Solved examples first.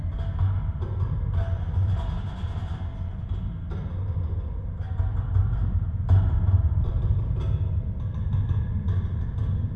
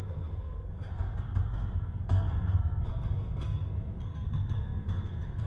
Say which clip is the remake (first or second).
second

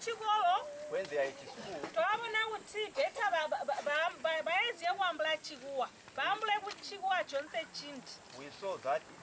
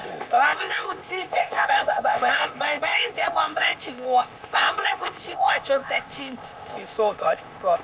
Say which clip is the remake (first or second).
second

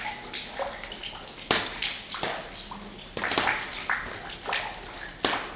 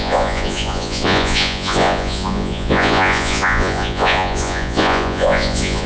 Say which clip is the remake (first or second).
second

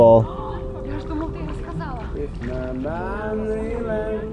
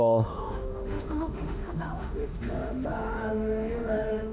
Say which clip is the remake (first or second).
second